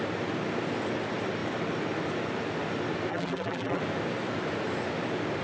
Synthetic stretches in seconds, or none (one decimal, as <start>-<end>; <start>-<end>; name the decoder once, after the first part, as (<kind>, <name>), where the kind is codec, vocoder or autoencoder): 3.1-3.8 (vocoder, BigVGAN v2)